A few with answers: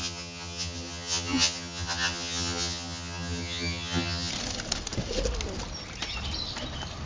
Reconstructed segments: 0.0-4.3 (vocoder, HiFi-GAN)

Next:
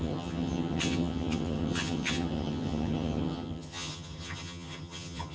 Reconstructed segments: 0.0-5.3 (vocoder, HiFi-GAN)

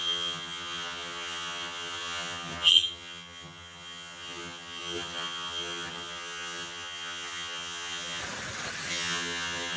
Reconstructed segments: 0.0-8.2 (vocoder, HiFi-GAN); 8.9-9.8